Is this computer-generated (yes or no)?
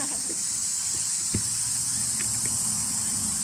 no